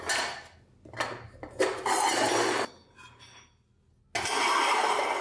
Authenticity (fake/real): real